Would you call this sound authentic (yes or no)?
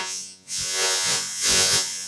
no